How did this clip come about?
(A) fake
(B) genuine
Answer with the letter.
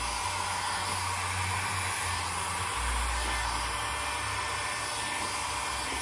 B